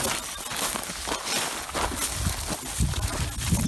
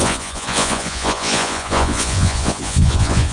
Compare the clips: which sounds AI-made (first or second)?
second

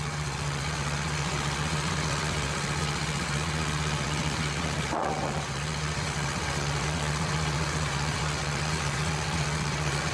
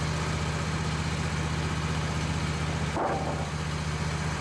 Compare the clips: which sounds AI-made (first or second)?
first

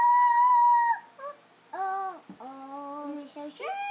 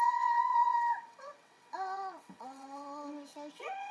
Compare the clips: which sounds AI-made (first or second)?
second